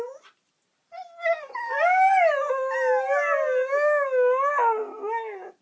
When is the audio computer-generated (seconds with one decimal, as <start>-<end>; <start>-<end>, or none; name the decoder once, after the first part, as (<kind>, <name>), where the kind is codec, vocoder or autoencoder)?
3.7-4.5 (codec, DAC)